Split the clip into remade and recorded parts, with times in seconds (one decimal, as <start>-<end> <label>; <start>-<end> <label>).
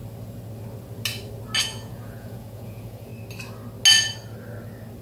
0.0-1.6 recorded; 1.6-3.1 remade; 3.1-5.0 recorded